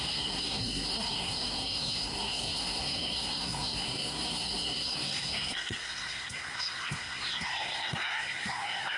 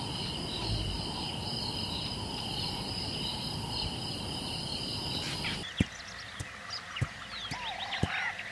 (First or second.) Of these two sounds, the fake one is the first